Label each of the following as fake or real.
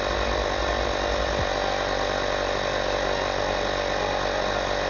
real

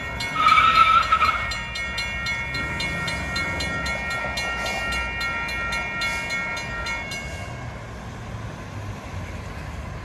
real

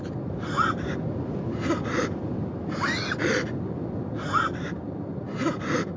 real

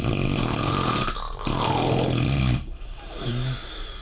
real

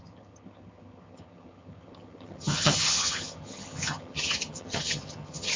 fake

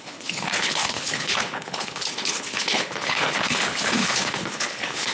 fake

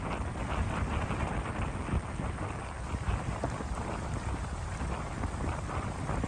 real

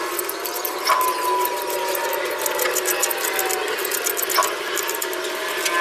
real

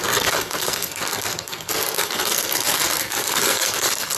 fake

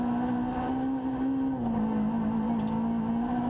real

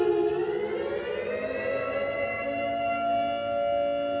real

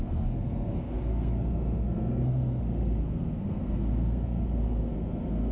fake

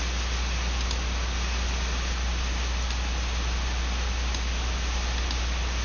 real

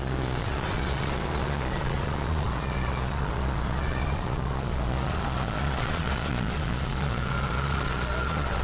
fake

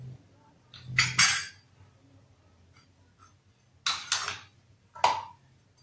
real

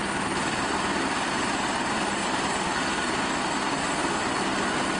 real